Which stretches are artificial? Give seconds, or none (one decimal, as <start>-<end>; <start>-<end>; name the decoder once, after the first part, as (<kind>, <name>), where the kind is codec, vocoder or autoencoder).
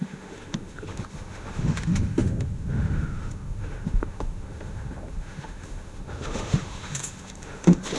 0.0-8.0 (autoencoder, DAC-VAE)